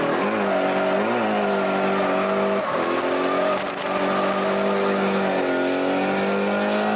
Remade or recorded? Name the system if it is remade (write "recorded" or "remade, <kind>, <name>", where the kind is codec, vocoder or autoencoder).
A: recorded